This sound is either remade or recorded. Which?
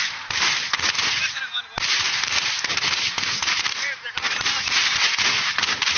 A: recorded